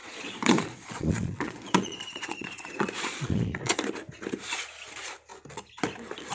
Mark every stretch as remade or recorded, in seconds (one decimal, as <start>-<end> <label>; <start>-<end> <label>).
0.0-3.8 remade; 3.8-6.3 recorded